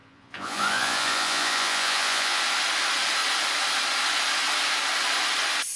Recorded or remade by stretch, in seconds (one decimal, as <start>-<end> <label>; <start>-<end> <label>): 0.0-2.4 remade; 2.4-5.8 recorded